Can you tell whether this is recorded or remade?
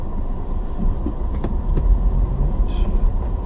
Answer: remade